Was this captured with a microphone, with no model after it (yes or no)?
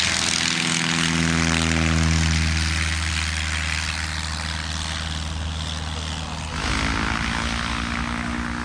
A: yes